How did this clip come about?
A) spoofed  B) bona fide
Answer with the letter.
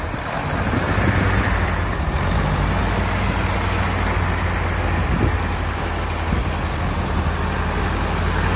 B